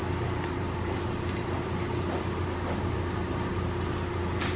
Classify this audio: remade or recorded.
recorded